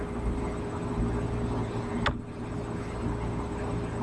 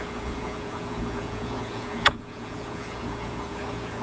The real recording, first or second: first